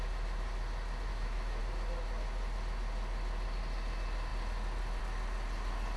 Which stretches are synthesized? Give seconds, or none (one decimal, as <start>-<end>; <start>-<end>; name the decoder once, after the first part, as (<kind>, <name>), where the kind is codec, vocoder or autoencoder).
1.1-1.6 (autoencoder, DAC-VAE)